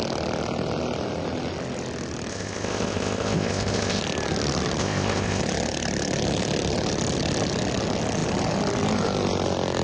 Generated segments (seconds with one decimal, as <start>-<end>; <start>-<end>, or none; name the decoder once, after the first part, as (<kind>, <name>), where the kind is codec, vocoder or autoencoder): 2.3-4.0 (codec, ZipCodec); 4.8-5.4